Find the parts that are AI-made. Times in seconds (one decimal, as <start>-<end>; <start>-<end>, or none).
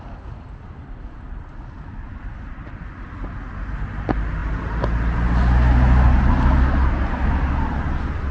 none